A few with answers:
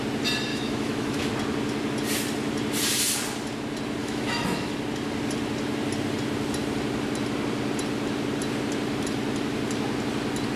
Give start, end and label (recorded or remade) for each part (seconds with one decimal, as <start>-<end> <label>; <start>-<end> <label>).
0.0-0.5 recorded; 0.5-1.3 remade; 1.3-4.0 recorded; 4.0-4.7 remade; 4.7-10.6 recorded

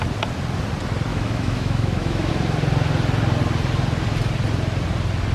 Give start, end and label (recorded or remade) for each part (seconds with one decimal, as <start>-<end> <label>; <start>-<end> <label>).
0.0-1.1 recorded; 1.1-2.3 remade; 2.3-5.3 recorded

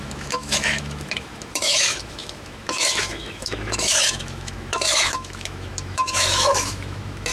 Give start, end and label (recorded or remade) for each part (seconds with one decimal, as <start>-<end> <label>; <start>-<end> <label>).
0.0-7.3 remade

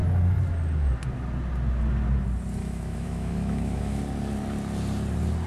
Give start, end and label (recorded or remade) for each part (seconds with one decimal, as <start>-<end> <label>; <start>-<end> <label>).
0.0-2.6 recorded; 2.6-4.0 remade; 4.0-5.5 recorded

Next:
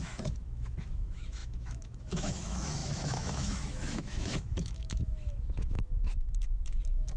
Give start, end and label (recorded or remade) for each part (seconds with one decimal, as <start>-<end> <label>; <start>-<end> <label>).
0.0-7.2 remade